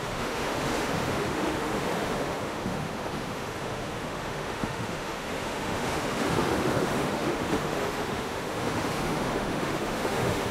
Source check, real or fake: fake